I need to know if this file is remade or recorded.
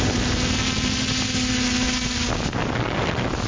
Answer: recorded